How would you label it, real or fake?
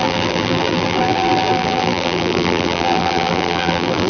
fake